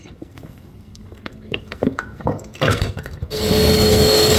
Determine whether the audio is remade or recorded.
remade